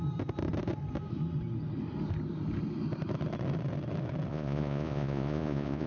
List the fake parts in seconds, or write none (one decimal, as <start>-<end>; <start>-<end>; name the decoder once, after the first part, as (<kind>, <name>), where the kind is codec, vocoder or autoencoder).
4.3-5.9 (vocoder, Vocos)